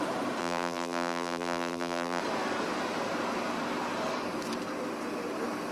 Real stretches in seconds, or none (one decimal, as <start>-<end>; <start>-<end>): 0.0-0.4; 2.2-5.7